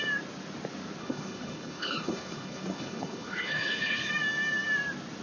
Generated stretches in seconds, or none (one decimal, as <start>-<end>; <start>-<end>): 1.0-4.1